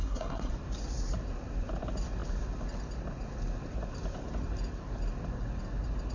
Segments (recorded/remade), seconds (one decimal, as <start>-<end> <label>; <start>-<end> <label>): 0.0-0.5 remade; 0.5-6.1 recorded